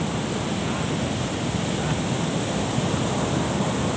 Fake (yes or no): no